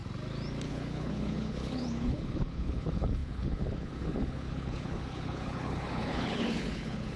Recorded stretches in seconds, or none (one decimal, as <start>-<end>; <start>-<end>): 0.0-0.7